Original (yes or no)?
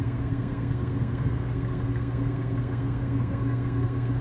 no